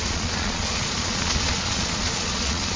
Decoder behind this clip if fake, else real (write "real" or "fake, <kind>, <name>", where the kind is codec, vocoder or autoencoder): fake, vocoder, Vocos